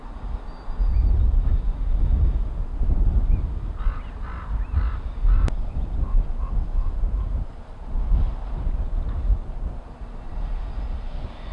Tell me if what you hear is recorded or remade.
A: recorded